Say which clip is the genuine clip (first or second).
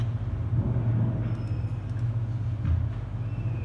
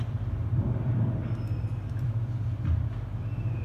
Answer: first